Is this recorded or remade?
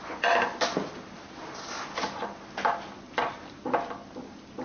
recorded